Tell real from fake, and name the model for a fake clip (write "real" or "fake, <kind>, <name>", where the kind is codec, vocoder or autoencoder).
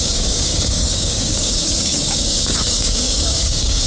fake, codec, DAC